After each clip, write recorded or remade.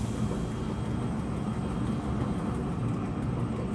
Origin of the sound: recorded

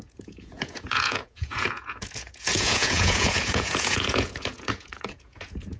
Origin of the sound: remade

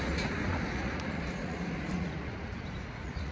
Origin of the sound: remade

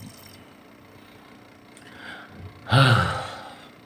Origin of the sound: recorded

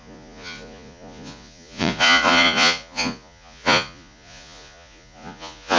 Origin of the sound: remade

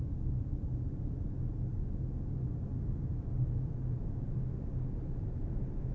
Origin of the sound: recorded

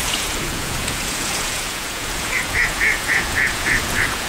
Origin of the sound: remade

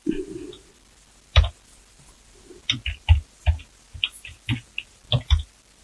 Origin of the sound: recorded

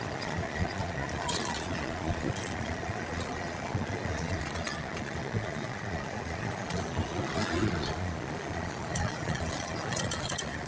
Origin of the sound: remade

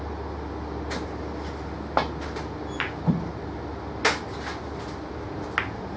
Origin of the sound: recorded